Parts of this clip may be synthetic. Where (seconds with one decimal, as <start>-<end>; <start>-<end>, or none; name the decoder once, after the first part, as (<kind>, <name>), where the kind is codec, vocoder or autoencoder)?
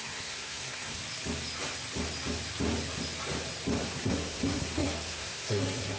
0.0-1.0 (codec, SNAC); 3.8-6.0